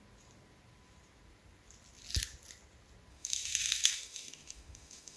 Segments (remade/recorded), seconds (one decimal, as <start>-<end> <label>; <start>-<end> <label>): 0.0-3.1 recorded; 3.1-5.2 remade